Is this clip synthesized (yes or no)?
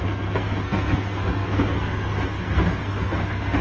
yes